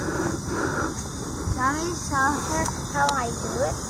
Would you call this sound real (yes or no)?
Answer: yes